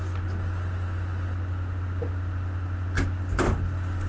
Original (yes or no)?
yes